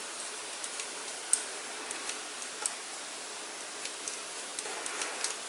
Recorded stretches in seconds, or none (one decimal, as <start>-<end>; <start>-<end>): 1.6-5.5